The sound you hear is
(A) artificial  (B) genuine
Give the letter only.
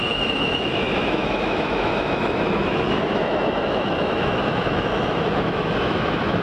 A